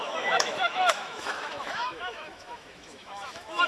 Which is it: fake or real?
fake